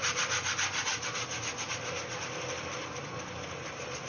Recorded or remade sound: recorded